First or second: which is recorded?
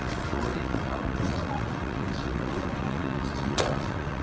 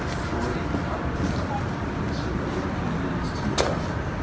second